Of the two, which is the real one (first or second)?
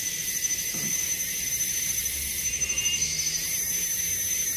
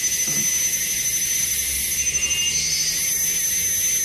second